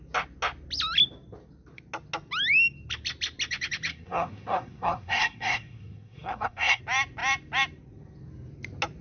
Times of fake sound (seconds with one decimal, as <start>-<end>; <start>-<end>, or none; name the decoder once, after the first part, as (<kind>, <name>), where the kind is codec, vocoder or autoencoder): 3.9-6.8 (codec, SNAC)